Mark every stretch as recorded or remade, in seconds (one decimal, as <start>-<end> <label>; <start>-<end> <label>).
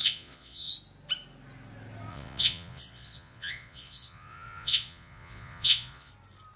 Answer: 0.0-0.7 remade; 0.7-2.1 recorded; 2.1-6.1 remade; 6.1-6.6 recorded